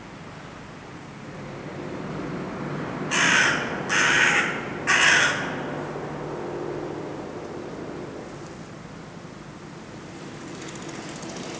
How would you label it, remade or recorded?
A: recorded